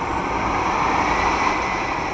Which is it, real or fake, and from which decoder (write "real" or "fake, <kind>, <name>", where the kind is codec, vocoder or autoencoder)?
real